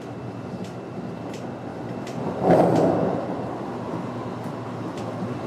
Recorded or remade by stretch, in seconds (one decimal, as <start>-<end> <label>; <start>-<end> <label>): 0.0-5.5 recorded